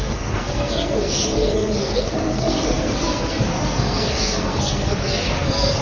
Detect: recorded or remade remade